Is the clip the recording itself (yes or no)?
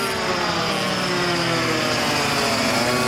yes